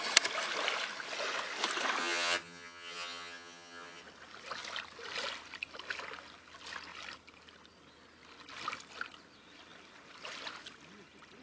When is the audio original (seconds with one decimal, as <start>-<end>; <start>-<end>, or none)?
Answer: 0.0-2.0; 4.0-11.4